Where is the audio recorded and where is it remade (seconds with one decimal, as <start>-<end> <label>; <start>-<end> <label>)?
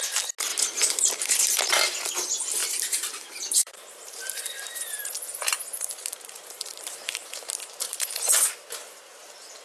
0.0-0.5 recorded; 0.5-1.6 remade; 1.6-2.6 recorded; 2.6-5.1 remade; 5.1-6.1 recorded; 6.1-8.5 remade; 8.5-9.6 recorded